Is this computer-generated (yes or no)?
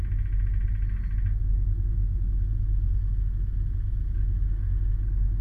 no